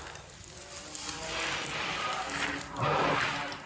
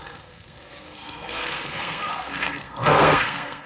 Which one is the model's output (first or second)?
second